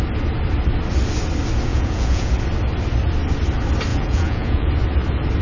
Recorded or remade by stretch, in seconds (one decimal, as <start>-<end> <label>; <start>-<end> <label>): 0.0-1.7 recorded; 1.7-2.3 remade; 2.3-3.9 recorded; 3.9-4.7 remade; 4.7-5.4 recorded